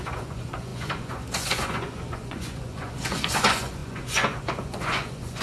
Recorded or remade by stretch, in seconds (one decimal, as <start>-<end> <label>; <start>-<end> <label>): 0.0-5.4 remade